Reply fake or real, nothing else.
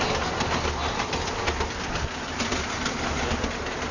real